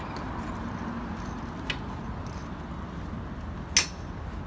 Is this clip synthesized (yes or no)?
no